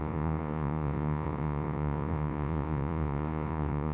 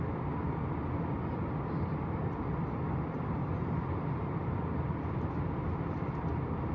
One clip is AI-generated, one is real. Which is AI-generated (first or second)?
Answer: first